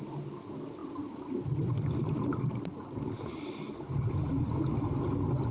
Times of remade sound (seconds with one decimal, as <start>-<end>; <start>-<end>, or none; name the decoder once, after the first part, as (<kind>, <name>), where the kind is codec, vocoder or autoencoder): none